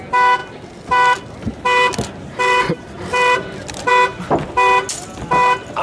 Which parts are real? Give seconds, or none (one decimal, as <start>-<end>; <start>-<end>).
0.0-0.4; 3.9-5.8